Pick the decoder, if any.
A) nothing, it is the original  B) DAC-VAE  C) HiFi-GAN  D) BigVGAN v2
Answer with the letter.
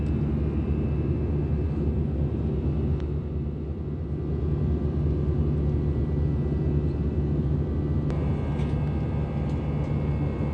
A